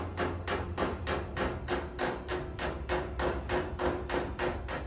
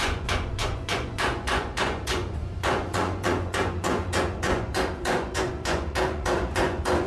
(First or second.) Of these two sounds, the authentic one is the first